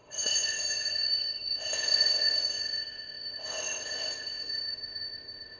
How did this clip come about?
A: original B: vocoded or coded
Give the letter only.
B